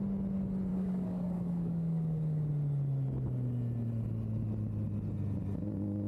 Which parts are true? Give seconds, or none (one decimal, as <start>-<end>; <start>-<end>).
0.0-0.7; 2.5-6.1